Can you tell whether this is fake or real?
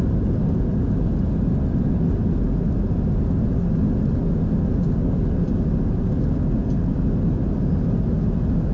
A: real